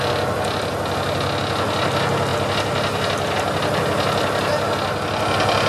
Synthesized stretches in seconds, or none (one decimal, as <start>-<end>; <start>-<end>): none